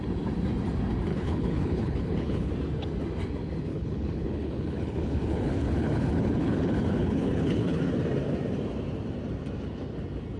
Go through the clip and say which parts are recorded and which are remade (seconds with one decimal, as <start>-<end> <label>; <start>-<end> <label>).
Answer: 0.0-1.1 recorded; 1.1-2.5 remade; 2.5-3.7 recorded; 3.7-7.8 remade; 7.8-10.4 recorded